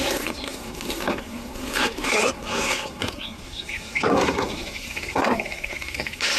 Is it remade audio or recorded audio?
remade